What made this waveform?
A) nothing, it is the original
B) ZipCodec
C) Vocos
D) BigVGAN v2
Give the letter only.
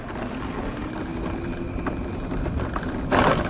A